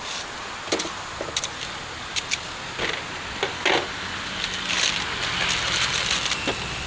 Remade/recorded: recorded